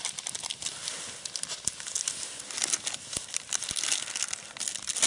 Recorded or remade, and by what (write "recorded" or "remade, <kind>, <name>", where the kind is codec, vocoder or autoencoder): recorded